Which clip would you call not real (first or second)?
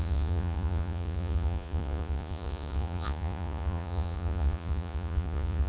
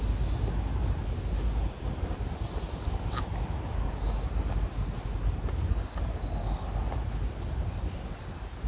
first